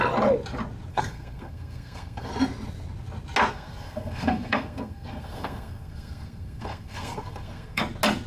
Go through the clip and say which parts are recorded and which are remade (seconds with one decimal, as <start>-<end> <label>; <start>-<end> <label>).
0.0-0.9 recorded; 0.9-2.3 remade; 2.3-3.5 recorded; 3.5-7.8 remade; 7.8-8.3 recorded